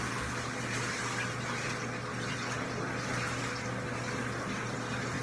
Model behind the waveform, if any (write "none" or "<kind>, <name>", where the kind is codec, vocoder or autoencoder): none